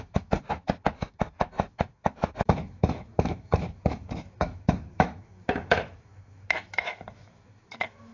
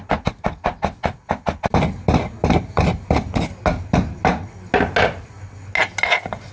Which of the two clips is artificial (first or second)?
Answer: first